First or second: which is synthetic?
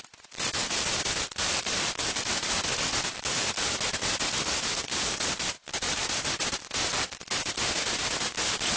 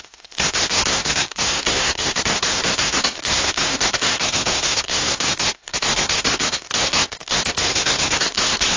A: second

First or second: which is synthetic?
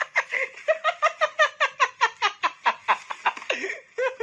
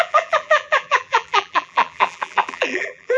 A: second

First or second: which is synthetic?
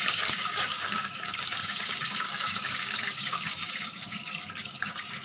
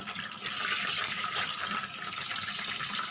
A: first